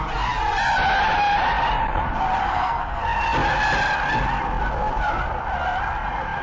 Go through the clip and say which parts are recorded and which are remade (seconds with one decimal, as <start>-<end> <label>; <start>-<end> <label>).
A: 0.0-2.4 recorded; 2.4-3.0 remade; 3.0-6.4 recorded